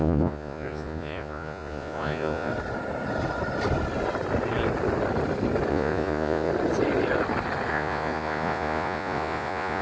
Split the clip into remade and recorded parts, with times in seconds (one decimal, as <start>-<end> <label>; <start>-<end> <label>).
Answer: 0.0-2.5 remade; 2.5-5.7 recorded; 5.7-6.5 remade; 6.5-7.7 recorded; 7.7-9.8 remade